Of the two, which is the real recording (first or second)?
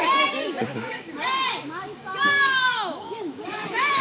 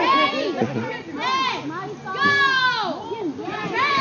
second